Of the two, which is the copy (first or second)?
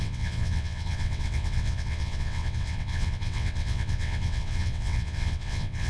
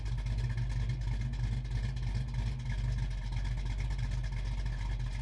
first